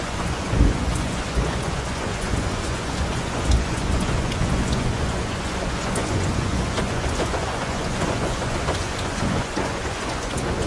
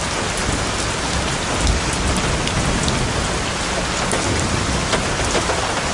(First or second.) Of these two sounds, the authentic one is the second